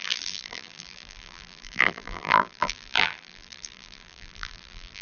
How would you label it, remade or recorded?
remade